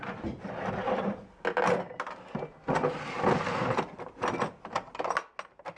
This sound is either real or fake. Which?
real